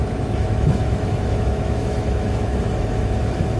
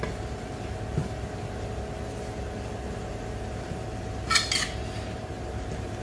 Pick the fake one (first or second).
first